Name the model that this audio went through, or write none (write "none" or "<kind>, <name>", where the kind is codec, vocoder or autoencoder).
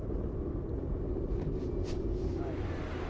none